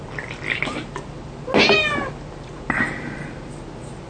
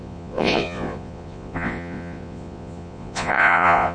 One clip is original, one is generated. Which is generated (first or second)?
second